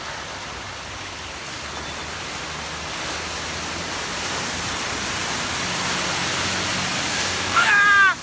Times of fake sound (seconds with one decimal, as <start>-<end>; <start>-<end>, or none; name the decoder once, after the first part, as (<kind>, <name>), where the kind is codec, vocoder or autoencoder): 7.1-7.7 (codec, DAC)